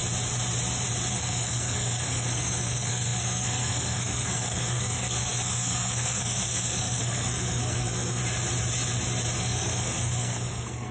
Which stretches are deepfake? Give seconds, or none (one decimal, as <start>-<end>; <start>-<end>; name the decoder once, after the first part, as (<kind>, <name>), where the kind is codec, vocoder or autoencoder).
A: 1.1-8.2 (codec, SNAC); 9.4-10.9